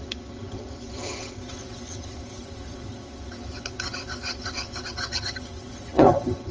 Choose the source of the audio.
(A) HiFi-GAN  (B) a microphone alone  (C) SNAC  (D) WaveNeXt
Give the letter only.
A